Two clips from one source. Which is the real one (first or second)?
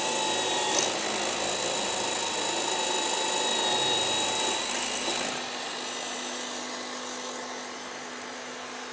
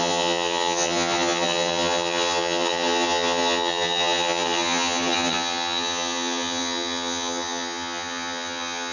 first